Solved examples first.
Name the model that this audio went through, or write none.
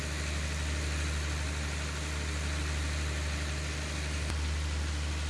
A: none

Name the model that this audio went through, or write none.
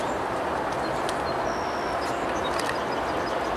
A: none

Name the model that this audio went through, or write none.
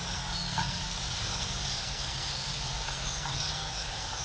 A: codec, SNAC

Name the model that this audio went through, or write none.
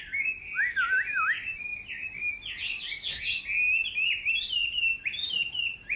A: none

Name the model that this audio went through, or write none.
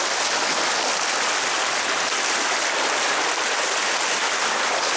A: none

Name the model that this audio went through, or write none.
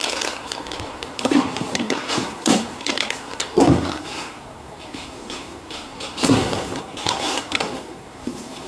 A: codec, SNAC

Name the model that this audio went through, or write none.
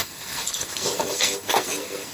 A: codec, SNAC